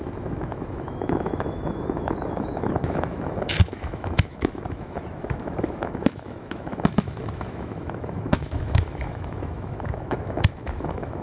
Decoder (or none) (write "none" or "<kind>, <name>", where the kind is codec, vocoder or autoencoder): autoencoder, DAC-VAE